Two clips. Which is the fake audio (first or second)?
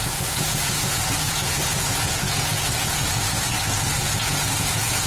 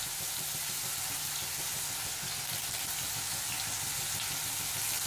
first